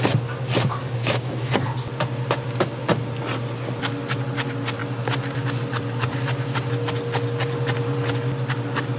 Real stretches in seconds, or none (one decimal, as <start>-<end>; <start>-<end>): 0.0-1.0; 1.5-9.0